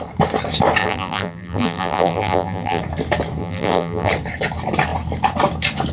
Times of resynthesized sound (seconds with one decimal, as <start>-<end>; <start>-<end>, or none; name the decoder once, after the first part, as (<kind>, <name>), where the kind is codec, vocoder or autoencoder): 0.8-2.8 (vocoder, BigVGAN v2); 3.4-4.1